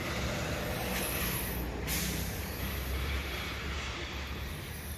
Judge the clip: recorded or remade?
remade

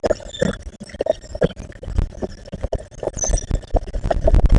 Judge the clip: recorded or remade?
recorded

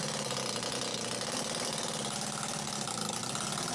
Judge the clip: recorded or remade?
recorded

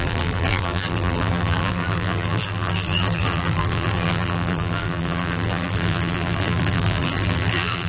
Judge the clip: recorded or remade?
remade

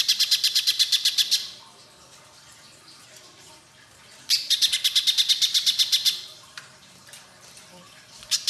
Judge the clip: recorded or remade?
remade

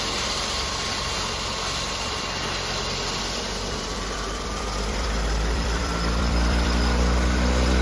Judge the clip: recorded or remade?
remade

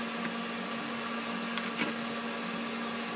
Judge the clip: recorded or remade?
recorded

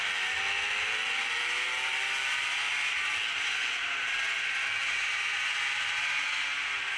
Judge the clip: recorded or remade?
recorded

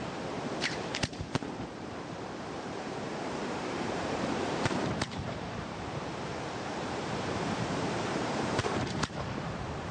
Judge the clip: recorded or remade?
remade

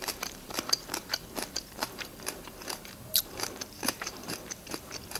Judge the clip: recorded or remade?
remade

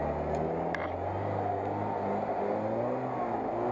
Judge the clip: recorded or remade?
recorded